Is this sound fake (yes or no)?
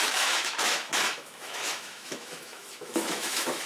yes